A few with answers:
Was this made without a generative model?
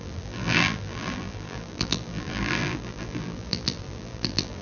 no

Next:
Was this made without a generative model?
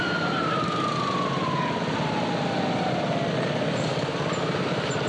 yes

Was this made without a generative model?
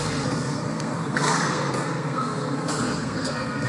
no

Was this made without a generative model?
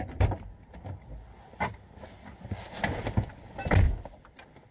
yes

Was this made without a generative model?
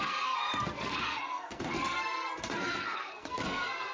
no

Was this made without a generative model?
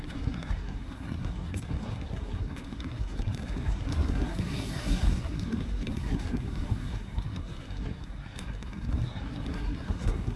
no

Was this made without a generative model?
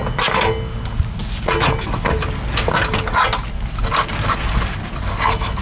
yes